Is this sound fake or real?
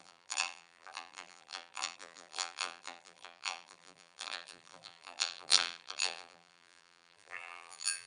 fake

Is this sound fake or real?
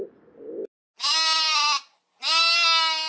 real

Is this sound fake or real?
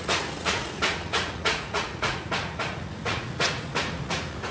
fake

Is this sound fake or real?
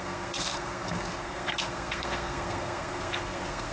fake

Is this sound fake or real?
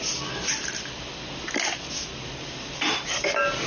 real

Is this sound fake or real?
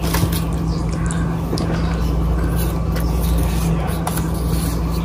real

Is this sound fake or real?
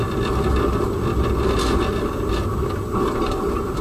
real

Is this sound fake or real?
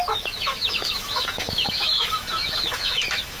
fake